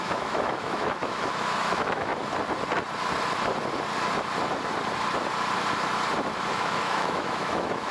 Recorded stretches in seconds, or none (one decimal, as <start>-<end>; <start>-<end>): 2.1-6.5